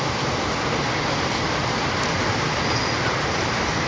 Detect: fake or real real